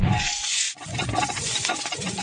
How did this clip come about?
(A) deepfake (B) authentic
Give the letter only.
A